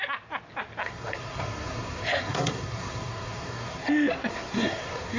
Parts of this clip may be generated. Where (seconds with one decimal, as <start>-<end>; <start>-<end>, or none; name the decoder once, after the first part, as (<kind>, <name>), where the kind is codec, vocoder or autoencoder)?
0.8-3.9 (codec, SNAC); 4.3-5.2